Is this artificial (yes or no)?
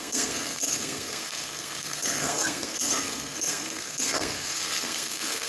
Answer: yes